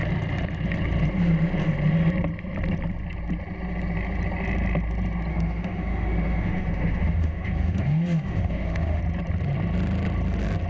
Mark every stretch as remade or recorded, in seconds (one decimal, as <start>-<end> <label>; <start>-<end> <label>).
0.0-5.3 recorded; 5.3-9.0 remade; 9.0-10.7 recorded